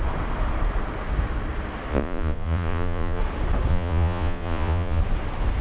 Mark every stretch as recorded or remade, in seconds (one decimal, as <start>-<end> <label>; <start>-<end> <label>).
0.0-1.9 recorded; 1.9-3.2 remade; 3.2-3.7 recorded; 3.7-5.0 remade; 5.0-5.6 recorded